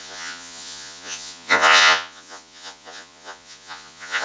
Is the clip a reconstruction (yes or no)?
yes